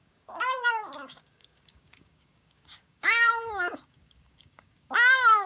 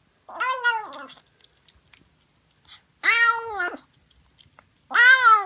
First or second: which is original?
second